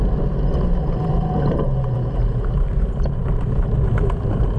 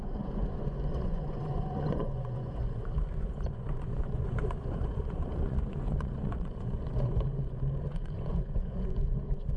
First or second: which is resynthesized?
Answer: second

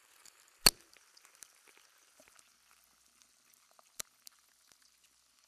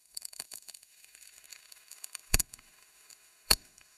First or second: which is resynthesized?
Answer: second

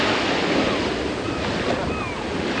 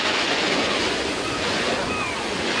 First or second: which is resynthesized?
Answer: second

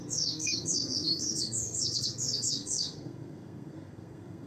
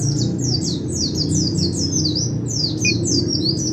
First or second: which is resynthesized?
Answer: first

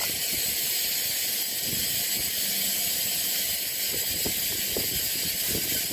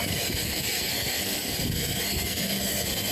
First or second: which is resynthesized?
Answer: second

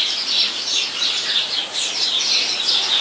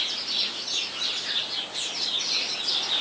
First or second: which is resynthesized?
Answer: first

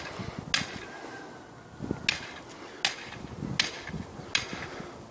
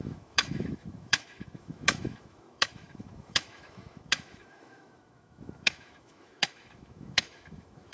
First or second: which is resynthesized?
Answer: second